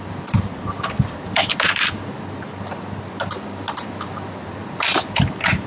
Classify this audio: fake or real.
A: real